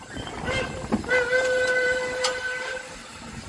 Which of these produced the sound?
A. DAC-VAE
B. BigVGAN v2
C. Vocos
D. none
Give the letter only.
B